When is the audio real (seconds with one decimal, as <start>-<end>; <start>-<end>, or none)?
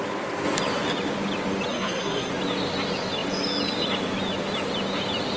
0.0-1.7; 2.3-5.4